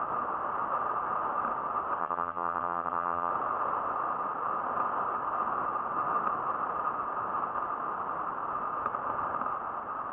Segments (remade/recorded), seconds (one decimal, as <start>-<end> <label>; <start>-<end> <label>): 0.0-2.0 recorded; 2.0-3.3 remade; 3.3-10.1 recorded